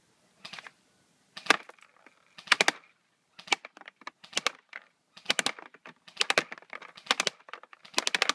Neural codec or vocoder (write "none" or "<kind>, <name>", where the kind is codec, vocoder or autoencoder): none